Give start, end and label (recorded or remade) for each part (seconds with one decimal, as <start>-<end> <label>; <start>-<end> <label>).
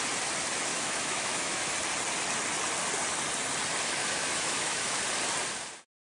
0.0-0.7 recorded; 0.7-1.7 remade; 1.7-4.0 recorded; 4.0-5.0 remade; 5.0-6.2 recorded